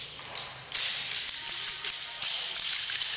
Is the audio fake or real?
real